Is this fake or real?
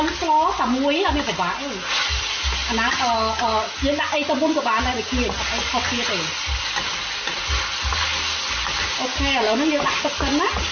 real